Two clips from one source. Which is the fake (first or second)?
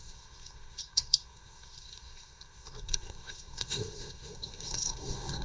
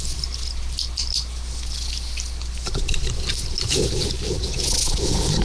first